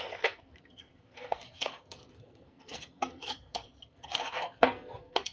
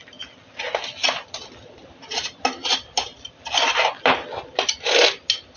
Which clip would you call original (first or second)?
second